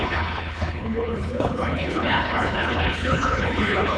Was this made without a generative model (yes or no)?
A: no